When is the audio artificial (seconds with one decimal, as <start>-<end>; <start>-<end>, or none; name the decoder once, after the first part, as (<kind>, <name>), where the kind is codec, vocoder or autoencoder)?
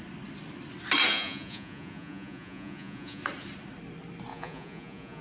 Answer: 1.1-3.2 (vocoder, Vocos); 4.3-5.2